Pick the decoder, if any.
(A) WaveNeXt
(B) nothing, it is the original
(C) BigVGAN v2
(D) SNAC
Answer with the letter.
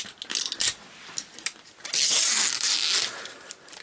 B